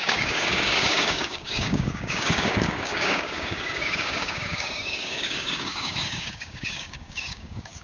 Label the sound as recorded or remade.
remade